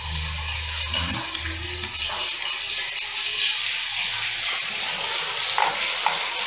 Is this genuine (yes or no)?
yes